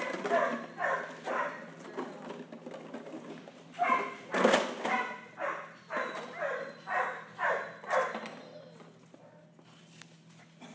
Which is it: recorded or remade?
recorded